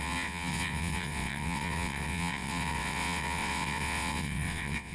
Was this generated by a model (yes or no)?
yes